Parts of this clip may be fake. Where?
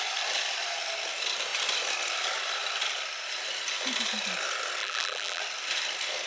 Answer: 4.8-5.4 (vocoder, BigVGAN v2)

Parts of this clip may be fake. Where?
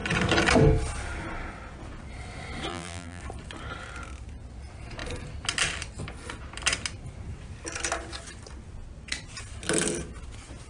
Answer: 2.7-3.2 (vocoder, BigVGAN v2)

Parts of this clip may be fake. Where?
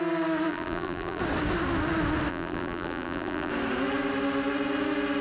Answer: 0.5-1.2 (vocoder, BigVGAN v2); 2.3-3.5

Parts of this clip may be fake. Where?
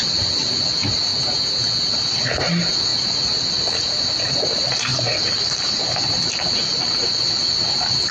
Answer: 0.0-1.1 (vocoder, BigVGAN v2); 1.9-8.1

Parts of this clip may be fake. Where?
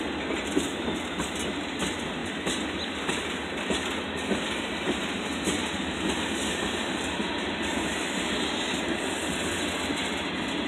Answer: none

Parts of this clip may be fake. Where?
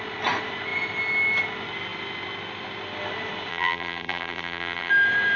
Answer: 3.5-4.9 (vocoder, BigVGAN v2)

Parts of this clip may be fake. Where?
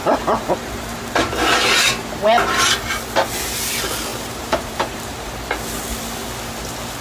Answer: 0.0-2.2 (vocoder, BigVGAN v2); 4.1-5.3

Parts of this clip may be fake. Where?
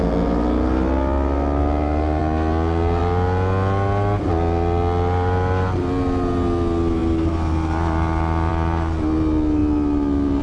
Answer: none